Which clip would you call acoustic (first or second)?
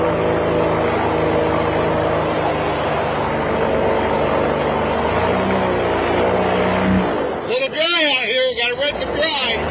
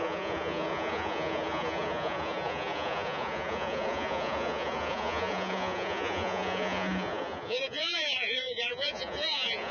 first